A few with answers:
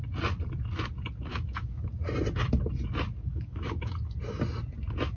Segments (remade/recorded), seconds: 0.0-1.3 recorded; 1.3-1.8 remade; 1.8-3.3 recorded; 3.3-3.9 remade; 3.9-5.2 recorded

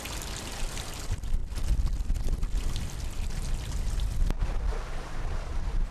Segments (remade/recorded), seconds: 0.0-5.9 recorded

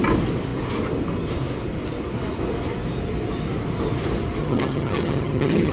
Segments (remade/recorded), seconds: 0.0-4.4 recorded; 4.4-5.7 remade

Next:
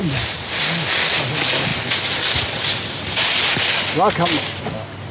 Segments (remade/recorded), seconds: 0.0-5.1 recorded

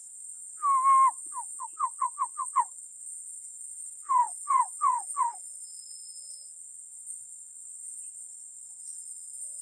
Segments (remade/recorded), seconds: 0.0-1.6 recorded; 1.6-9.6 remade

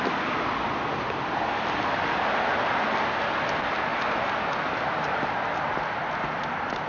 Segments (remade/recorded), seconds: 0.0-6.9 recorded

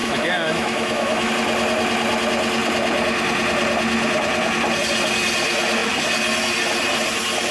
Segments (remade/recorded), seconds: 0.0-1.3 remade; 1.3-7.5 recorded